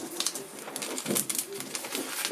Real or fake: real